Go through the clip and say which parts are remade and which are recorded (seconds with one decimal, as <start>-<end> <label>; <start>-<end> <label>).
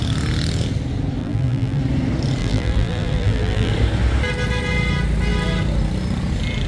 0.0-1.2 recorded; 1.2-1.8 remade; 1.8-2.4 recorded; 2.4-3.7 remade; 3.7-6.7 recorded